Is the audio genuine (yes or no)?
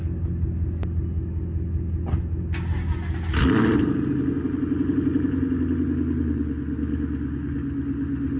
yes